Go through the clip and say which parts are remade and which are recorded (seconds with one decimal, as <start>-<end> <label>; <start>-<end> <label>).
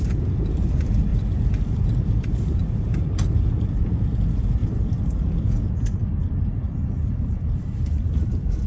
0.0-8.7 remade